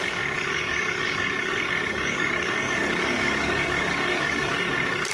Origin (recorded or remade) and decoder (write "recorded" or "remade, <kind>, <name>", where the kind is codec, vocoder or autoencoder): remade, codec, DAC